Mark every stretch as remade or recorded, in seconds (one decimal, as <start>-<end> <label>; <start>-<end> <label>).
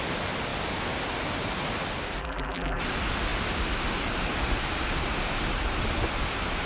0.0-2.2 recorded; 2.2-2.8 remade; 2.8-6.7 recorded